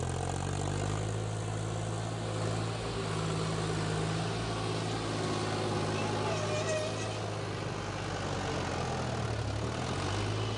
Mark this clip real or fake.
real